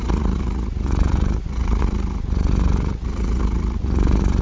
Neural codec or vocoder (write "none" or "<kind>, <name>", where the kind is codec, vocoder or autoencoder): vocoder, Vocos